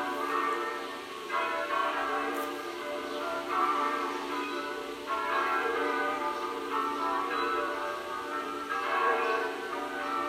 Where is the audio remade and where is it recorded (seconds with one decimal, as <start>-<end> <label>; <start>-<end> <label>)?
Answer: 0.0-10.3 remade